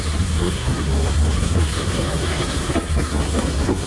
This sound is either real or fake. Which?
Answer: fake